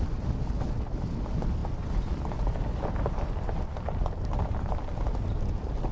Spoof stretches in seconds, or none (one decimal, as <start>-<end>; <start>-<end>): none